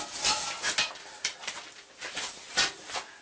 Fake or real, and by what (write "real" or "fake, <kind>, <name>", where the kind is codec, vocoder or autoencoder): real